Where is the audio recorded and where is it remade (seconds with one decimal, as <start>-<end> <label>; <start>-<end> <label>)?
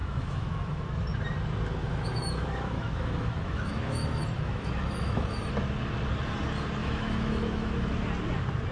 0.0-0.8 remade; 0.8-1.8 recorded; 1.8-5.5 remade; 5.5-6.8 recorded; 6.8-7.9 remade; 7.9-8.7 recorded